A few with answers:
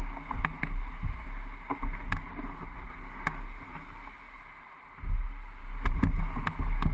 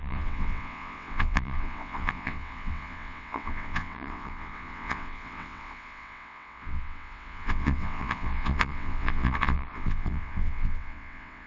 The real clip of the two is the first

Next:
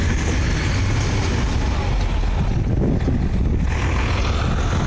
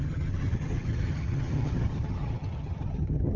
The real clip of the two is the first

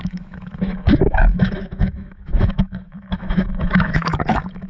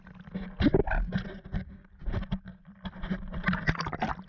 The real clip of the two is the second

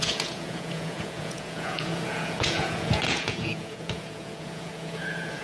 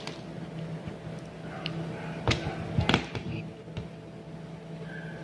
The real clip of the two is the second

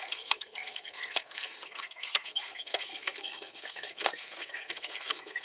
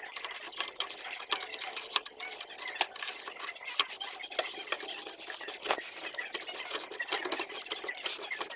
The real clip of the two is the second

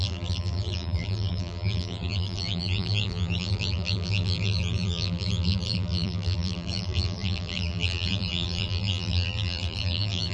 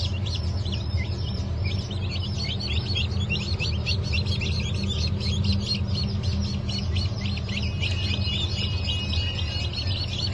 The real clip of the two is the second